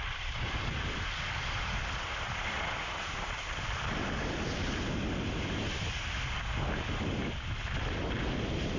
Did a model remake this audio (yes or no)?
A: no